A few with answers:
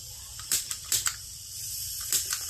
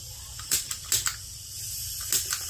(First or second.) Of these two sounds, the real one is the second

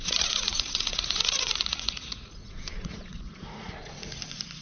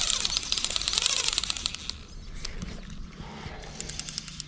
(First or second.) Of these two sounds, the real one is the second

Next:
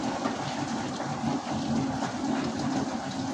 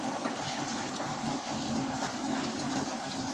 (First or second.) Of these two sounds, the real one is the first